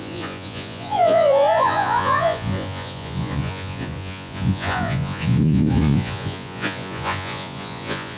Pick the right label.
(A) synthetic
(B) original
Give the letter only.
A